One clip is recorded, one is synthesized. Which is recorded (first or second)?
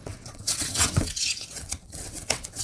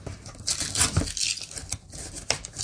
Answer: second